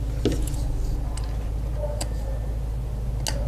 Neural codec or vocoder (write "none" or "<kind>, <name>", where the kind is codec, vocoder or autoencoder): none